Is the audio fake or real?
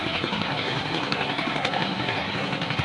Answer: fake